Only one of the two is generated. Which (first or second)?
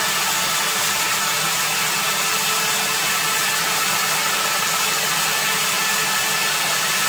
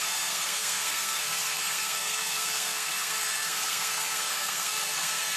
second